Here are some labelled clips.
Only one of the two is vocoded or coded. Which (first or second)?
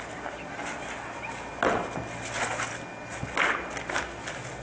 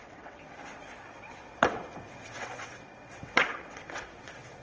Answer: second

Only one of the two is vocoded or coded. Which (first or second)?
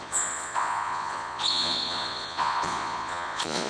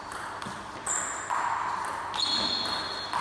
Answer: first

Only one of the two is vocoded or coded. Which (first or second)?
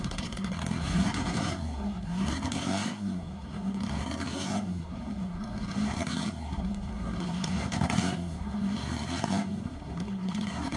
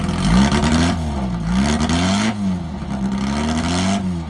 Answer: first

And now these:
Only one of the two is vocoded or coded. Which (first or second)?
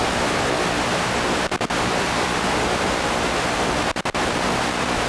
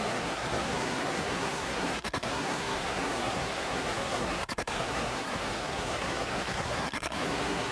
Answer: second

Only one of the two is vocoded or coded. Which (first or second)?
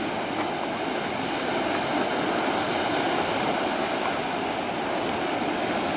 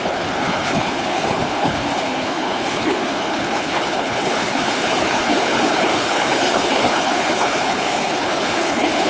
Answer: second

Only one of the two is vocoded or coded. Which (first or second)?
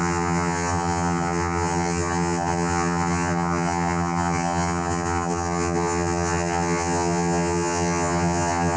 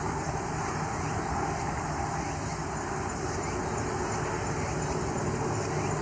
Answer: first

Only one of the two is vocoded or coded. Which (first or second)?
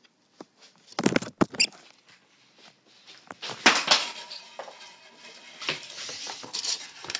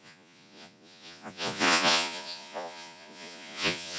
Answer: second